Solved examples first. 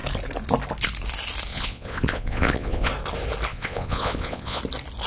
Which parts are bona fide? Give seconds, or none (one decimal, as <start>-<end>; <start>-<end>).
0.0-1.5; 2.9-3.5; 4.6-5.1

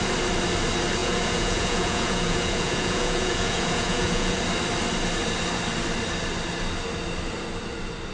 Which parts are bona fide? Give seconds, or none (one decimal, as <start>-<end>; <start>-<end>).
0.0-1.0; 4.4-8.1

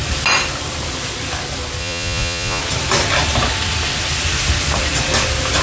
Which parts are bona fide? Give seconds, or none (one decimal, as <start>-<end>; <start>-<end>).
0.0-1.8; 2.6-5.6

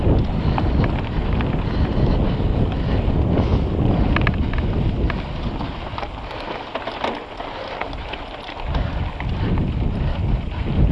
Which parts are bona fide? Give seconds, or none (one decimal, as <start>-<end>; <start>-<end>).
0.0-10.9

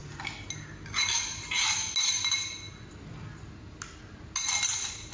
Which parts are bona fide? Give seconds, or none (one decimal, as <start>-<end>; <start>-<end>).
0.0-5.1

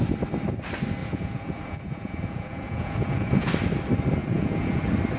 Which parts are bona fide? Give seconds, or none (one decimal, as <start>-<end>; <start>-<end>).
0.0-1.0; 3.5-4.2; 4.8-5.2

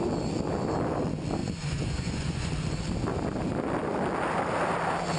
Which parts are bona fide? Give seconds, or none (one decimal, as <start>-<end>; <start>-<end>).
0.0-1.4; 2.5-5.2

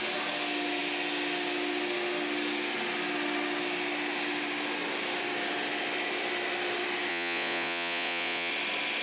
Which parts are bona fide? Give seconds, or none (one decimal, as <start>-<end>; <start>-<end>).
0.0-7.1; 8.5-9.0